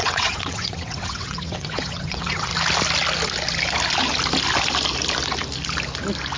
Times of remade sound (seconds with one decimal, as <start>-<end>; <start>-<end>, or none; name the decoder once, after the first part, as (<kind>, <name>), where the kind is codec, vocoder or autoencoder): 0.0-2.5 (vocoder, WaveNeXt)